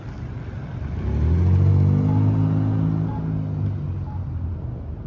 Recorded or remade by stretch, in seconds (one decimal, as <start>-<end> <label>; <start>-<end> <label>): 0.0-5.1 recorded